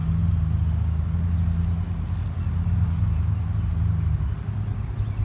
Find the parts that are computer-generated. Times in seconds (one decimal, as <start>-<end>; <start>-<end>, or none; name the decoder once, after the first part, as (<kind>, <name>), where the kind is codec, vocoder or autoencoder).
none